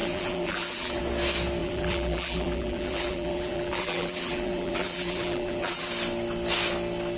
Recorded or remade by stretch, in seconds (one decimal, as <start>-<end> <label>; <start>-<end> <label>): 0.0-1.0 remade; 1.0-1.6 recorded; 1.6-5.9 remade; 5.9-7.2 recorded